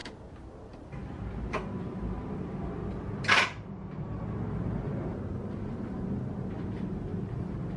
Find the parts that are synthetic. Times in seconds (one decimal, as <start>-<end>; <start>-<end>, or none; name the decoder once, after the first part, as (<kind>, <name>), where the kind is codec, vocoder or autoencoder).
0.7-2.8 (vocoder, BigVGAN v2); 6.5-7.8

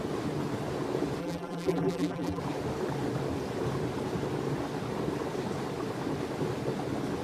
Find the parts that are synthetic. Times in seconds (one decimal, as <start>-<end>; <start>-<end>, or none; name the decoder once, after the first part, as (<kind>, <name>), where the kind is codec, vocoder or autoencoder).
1.2-2.4 (vocoder, BigVGAN v2)

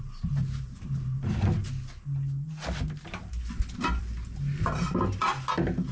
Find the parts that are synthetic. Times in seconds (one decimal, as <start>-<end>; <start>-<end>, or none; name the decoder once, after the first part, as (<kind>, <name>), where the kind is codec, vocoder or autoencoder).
none

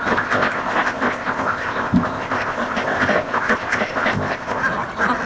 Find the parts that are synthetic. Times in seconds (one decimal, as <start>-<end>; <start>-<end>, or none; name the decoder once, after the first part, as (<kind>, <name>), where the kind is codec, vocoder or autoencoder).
0.0-4.6 (codec, ZipCodec)